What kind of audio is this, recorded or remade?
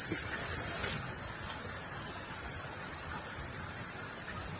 recorded